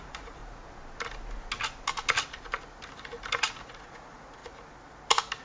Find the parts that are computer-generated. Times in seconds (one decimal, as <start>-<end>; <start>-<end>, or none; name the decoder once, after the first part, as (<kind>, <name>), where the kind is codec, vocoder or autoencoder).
0.0-0.4 (vocoder, Vocos); 3.6-4.4